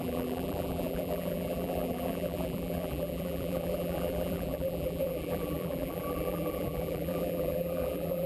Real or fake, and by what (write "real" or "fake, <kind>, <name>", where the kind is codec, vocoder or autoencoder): fake, vocoder, BigVGAN v2